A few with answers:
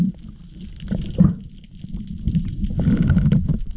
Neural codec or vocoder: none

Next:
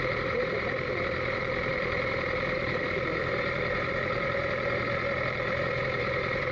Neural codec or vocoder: vocoder, BigVGAN v2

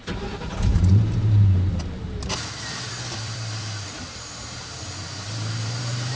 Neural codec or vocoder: vocoder, BigVGAN v2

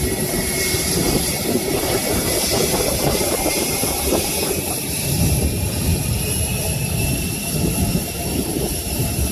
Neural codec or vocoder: vocoder, BigVGAN v2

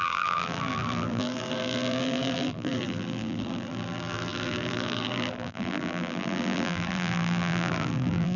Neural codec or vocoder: vocoder, BigVGAN v2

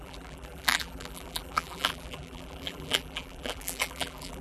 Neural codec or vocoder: vocoder, BigVGAN v2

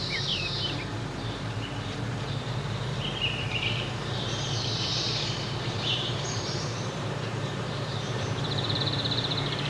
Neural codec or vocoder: vocoder, BigVGAN v2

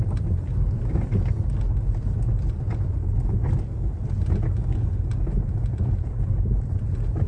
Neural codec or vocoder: none